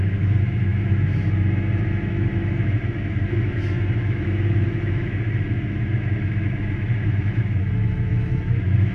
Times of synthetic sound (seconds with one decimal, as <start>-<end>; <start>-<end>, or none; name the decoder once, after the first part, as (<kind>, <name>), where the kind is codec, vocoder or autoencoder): 0.0-8.9 (autoencoder, DAC-VAE)